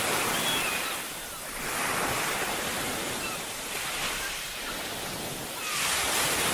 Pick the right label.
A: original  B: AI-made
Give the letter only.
A